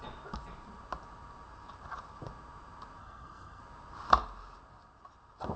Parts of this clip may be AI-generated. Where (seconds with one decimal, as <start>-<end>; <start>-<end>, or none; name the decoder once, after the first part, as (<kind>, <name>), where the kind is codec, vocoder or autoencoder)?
3.0-3.6 (codec, SNAC)